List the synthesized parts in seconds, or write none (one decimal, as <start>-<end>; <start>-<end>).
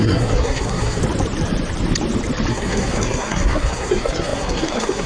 0.0-1.0; 2.5-5.1